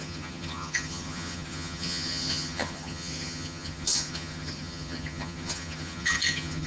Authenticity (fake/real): fake